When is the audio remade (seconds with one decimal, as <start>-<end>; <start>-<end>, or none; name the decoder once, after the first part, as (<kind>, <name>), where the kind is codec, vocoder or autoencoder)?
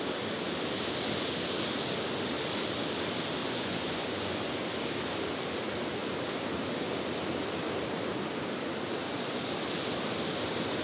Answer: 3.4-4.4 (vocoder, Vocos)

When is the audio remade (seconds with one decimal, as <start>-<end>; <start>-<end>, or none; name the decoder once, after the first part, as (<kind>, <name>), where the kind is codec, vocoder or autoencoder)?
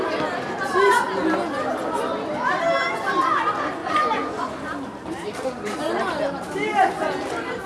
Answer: 3.8-4.5 (vocoder, Vocos)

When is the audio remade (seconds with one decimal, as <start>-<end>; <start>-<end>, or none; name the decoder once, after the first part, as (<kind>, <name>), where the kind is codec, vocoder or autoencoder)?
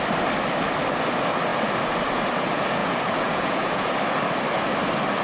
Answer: 2.8-3.9 (vocoder, Vocos)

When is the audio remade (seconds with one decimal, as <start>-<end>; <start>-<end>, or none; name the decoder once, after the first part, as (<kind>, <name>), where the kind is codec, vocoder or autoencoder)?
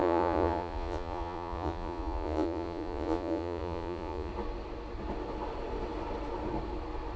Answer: 0.0-4.3 (vocoder, Vocos)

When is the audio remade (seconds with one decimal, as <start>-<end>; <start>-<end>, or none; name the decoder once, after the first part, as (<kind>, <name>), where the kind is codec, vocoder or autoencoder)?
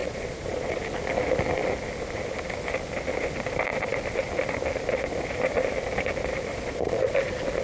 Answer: 0.0-0.8 (vocoder, Vocos); 6.5-7.1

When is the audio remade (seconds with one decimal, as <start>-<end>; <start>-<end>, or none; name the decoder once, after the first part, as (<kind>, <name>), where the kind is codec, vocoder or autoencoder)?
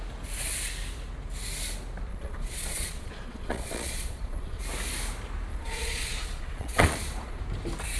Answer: 2.1-4.6 (vocoder, Vocos); 5.5-7.4